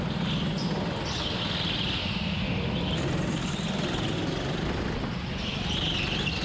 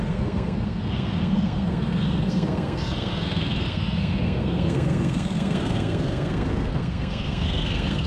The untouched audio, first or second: first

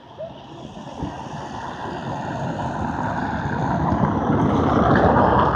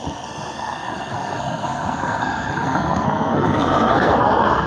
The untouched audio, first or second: first